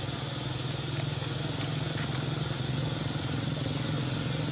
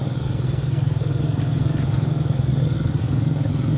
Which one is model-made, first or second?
second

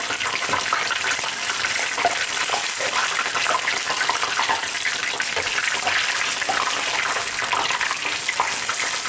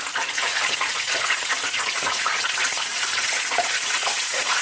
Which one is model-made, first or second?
second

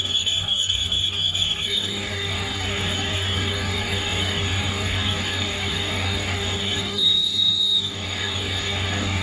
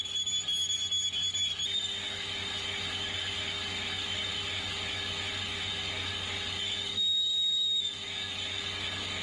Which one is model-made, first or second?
first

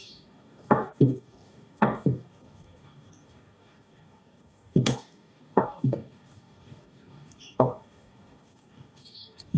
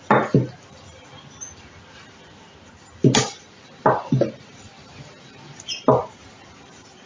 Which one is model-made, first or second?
first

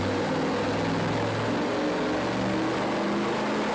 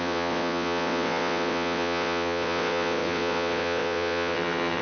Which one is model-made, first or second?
second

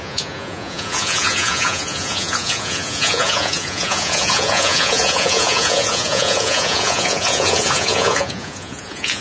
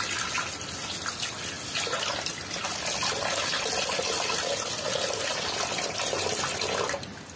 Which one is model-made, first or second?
first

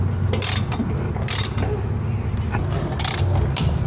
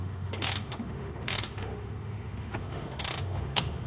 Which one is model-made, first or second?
second